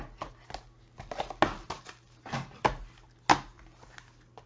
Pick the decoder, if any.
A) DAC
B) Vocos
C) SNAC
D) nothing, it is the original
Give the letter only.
D